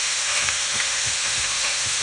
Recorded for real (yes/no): no